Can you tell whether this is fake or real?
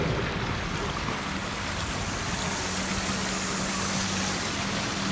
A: real